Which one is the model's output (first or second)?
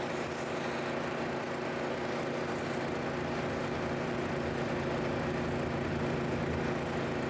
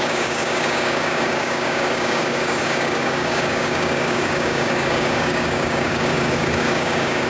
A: second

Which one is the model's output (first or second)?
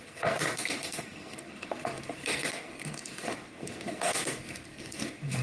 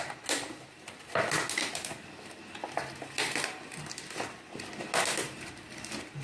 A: first